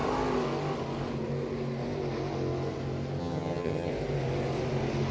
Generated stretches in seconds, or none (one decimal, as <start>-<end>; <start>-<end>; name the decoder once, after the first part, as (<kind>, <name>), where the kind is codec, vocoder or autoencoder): 3.2-3.9 (vocoder, HiFi-GAN)